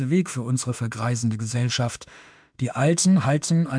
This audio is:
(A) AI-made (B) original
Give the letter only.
A